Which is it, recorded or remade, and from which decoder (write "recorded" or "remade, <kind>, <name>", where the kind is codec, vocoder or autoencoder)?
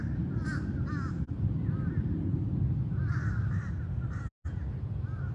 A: recorded